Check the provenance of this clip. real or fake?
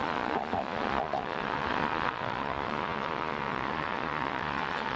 fake